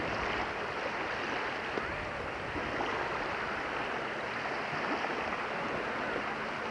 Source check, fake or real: real